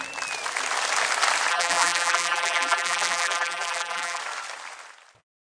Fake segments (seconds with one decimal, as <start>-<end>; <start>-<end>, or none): 1.5-4.2